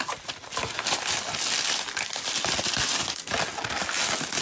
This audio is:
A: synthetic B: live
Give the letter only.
B